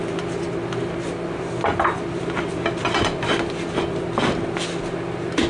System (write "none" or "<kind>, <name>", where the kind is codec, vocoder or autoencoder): none